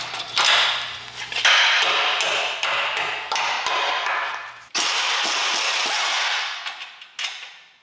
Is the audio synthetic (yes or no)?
no